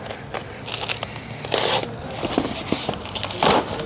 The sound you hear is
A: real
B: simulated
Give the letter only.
A